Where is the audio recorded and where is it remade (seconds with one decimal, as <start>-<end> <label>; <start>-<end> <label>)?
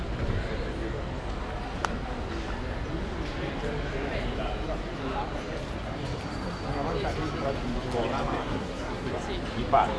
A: 0.0-8.4 recorded; 8.4-9.1 remade; 9.1-10.0 recorded